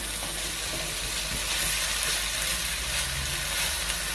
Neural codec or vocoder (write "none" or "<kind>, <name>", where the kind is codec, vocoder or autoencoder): none